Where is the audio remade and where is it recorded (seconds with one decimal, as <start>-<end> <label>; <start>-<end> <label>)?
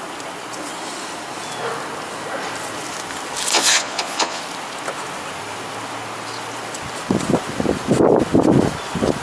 0.0-3.5 recorded; 3.5-4.4 remade; 4.4-9.2 recorded